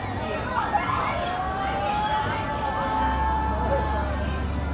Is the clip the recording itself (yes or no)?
yes